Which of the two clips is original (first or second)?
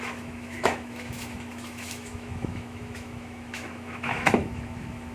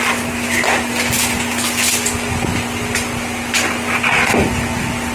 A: second